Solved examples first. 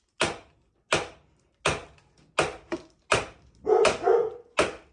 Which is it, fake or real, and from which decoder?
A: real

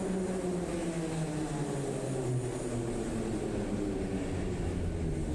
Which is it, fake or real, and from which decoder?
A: real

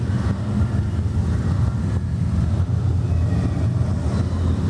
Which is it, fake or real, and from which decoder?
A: real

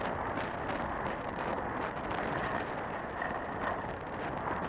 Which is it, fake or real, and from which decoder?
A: real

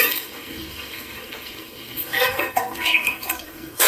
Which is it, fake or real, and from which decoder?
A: fake, codec, SNAC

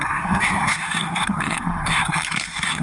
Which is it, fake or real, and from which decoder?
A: fake, codec, SNAC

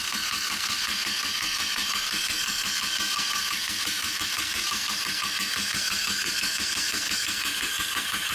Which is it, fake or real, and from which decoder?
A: fake, codec, SNAC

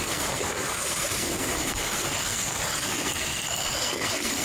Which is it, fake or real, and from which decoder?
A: fake, codec, SNAC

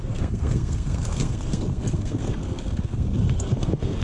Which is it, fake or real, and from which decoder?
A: fake, codec, SNAC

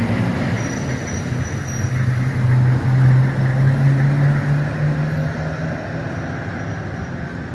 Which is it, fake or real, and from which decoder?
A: real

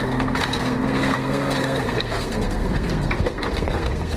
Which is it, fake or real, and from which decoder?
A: fake, codec, SNAC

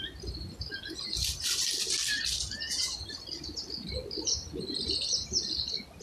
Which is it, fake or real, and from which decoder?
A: real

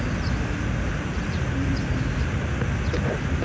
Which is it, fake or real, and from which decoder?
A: real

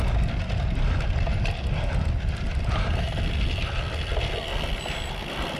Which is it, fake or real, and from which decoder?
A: real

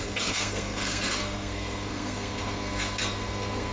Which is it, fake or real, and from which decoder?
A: fake, codec, SNAC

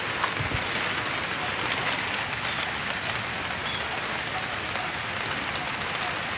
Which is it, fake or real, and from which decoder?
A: real